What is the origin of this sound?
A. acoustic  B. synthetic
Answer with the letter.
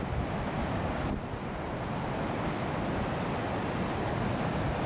A